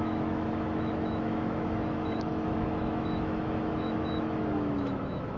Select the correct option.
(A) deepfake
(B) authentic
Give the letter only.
A